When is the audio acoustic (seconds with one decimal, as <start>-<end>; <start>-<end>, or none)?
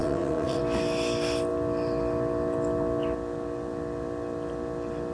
0.6-5.1